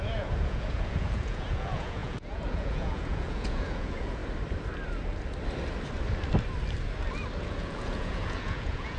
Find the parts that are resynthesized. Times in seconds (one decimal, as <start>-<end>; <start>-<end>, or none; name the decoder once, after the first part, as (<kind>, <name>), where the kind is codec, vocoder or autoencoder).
0.0-4.2 (vocoder, Vocos); 7.4-9.0